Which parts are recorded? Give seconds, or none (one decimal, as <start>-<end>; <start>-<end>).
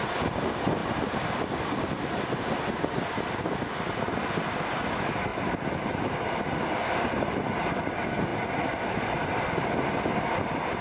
0.0-0.8; 2.2-5.3; 5.9-10.8